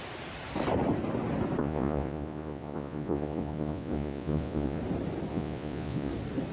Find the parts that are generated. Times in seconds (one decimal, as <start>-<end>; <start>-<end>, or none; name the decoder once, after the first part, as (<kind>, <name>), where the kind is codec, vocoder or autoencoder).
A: 1.6-4.8 (vocoder, Vocos); 5.3-6.1